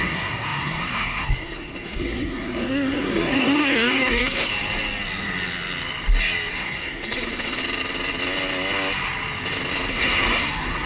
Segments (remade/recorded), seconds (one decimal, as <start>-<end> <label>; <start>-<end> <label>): 0.0-4.5 remade; 4.5-6.5 recorded; 6.5-7.6 remade; 7.6-9.9 recorded; 9.9-10.9 remade